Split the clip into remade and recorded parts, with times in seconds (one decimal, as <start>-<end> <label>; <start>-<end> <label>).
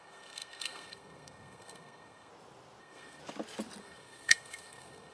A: 0.0-2.3 remade; 2.3-2.8 recorded; 2.8-3.2 remade; 3.2-3.8 recorded; 3.8-5.1 remade